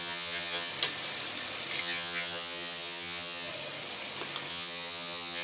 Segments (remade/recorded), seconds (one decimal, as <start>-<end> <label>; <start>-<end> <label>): 0.0-0.7 remade; 0.7-1.8 recorded; 1.8-3.5 remade; 3.5-4.5 recorded; 4.5-5.4 remade